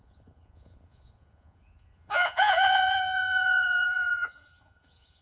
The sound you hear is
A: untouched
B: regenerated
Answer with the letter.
B